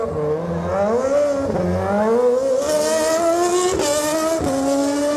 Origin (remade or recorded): recorded